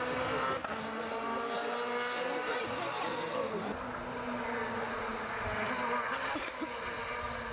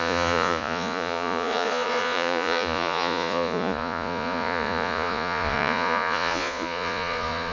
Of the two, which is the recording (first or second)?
first